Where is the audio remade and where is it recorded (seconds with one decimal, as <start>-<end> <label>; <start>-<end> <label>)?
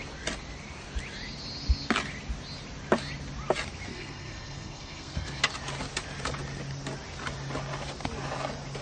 0.0-3.9 recorded; 3.9-5.4 remade; 5.4-8.8 recorded